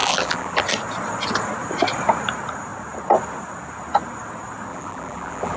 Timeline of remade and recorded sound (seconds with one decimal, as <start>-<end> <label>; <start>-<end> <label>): 0.0-0.6 remade; 0.6-4.7 recorded; 4.7-5.6 remade